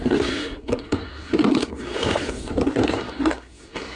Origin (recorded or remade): remade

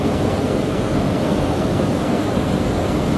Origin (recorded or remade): remade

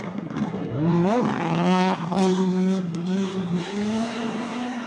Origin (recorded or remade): remade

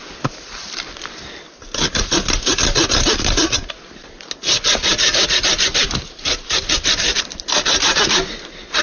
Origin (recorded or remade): recorded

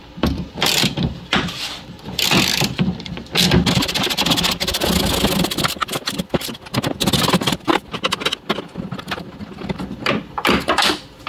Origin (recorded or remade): recorded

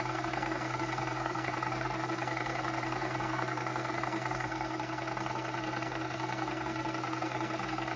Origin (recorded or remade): remade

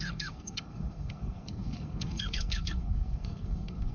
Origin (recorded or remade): remade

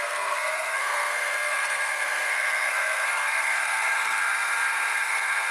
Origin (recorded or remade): remade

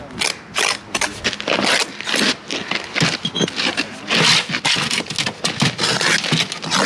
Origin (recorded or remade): recorded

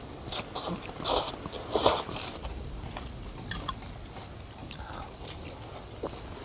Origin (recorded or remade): recorded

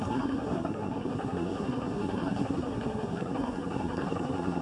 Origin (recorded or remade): remade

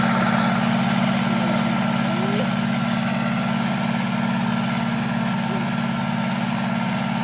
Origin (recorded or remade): recorded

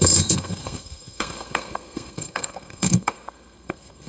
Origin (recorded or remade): remade